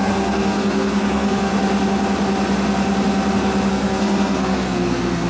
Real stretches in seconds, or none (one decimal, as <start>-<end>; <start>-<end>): 1.5-3.7